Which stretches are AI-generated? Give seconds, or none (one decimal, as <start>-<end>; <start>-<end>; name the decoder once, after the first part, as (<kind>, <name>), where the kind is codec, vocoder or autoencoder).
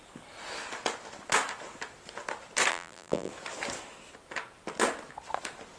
2.7-3.3 (vocoder, BigVGAN v2)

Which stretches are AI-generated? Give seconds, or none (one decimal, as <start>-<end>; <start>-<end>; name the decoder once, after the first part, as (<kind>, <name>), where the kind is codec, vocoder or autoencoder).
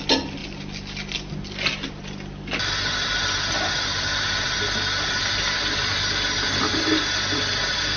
none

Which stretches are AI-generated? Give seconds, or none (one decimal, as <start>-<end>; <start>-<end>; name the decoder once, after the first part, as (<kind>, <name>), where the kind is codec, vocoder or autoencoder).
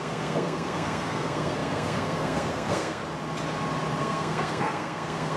0.0-3.0 (codec, SNAC); 4.0-5.4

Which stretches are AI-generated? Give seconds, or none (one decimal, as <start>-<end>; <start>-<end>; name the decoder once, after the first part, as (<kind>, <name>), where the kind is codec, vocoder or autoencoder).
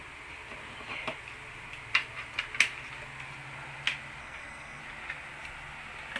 4.2-4.8 (codec, SNAC)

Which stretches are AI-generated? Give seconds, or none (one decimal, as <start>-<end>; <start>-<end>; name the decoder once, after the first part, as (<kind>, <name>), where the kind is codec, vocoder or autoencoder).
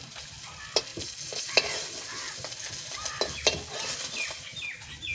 none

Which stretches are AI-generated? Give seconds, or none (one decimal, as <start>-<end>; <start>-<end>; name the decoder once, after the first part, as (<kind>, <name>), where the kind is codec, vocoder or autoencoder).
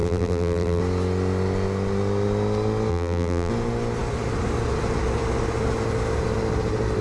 0.0-0.8 (vocoder, BigVGAN v2); 2.9-3.5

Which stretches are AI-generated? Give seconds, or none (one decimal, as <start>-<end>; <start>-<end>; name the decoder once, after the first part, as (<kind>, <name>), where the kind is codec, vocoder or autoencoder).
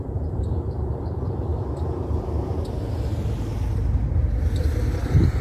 0.0-1.5 (vocoder, BigVGAN v2); 3.2-5.4